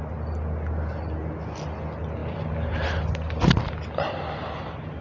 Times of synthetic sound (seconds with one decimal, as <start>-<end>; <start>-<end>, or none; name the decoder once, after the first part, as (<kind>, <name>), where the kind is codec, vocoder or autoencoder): none